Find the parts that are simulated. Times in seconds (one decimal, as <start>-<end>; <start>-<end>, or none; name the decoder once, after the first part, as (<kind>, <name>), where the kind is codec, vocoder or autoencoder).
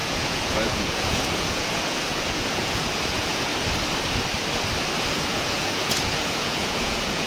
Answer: 0.0-3.5 (vocoder, Vocos); 5.0-7.3